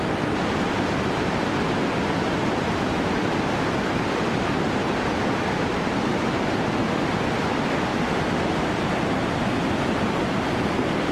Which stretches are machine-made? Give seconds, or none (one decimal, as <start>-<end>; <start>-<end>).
none